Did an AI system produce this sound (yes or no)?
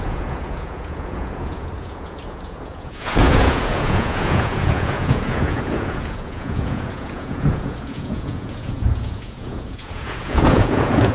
yes